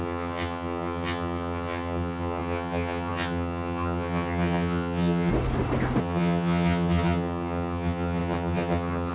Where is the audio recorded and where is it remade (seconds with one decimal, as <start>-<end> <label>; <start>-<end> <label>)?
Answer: 0.0-5.3 remade; 5.3-6.0 recorded; 6.0-9.1 remade